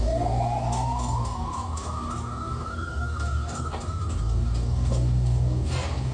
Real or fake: fake